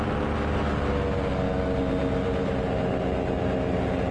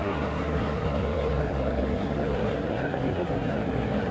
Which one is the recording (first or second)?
first